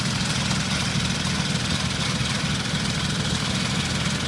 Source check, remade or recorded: recorded